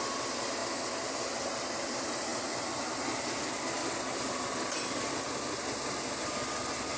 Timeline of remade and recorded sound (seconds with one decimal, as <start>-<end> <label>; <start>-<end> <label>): 0.0-7.0 recorded